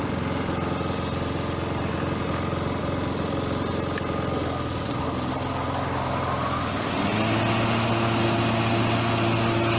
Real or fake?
real